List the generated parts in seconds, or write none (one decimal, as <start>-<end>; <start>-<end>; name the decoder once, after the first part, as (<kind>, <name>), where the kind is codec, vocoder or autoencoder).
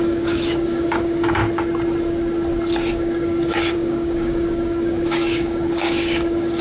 0.0-1.4 (codec, DAC); 2.9-6.6